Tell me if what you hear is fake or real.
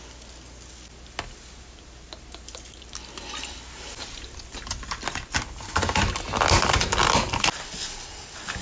real